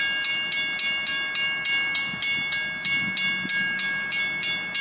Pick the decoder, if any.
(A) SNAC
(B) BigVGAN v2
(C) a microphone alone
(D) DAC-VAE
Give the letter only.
C